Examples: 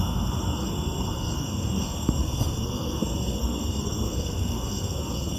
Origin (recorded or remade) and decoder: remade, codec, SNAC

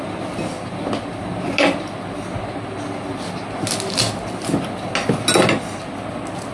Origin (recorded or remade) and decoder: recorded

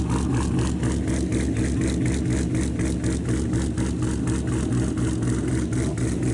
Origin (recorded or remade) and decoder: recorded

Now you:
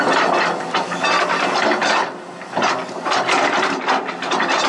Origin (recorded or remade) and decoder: recorded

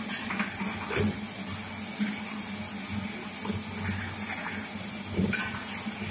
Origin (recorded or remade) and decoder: recorded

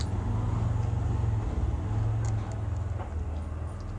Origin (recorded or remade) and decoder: recorded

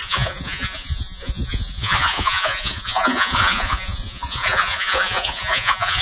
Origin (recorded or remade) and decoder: remade, vocoder, Vocos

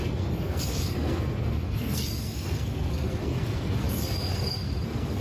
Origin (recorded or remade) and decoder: remade, codec, SNAC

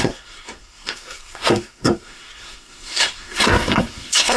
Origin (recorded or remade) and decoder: remade, codec, SNAC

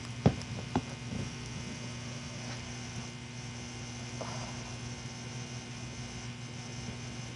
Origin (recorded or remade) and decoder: recorded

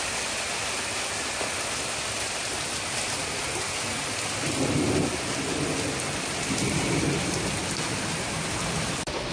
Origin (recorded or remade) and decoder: recorded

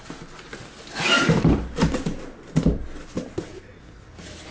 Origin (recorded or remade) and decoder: recorded